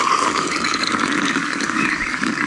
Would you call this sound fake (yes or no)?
yes